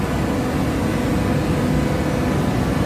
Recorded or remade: recorded